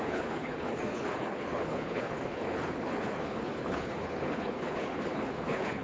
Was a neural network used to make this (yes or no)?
yes